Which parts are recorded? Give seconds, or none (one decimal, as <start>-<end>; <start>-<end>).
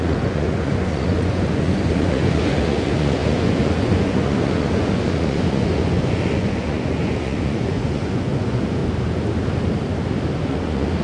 8.8-10.4